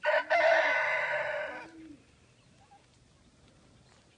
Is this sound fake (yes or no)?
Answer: no